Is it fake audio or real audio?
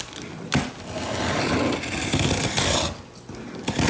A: real